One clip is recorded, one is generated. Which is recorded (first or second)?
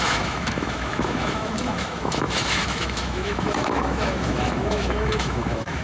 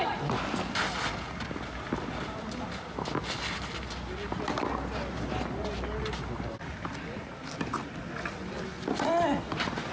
second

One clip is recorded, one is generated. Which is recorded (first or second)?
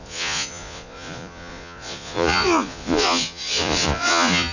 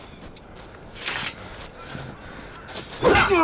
second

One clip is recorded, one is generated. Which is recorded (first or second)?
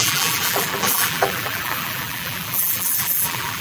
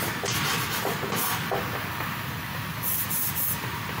second